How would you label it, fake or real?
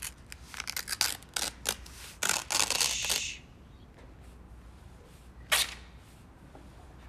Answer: real